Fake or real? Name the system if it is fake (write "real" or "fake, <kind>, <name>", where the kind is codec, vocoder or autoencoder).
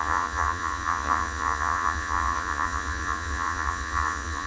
fake, vocoder, Vocos